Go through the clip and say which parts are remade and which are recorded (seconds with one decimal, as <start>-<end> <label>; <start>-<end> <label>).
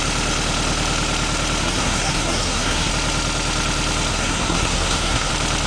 0.0-1.6 recorded; 1.6-2.9 remade; 2.9-4.1 recorded; 4.1-5.3 remade; 5.3-5.7 recorded